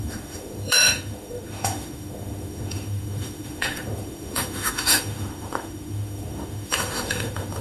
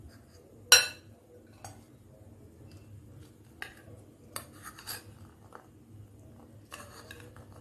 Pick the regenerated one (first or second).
first